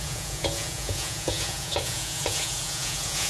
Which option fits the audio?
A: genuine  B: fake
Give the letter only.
B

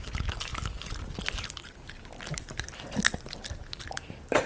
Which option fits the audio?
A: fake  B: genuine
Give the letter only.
B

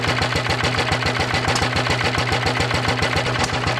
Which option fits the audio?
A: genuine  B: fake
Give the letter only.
A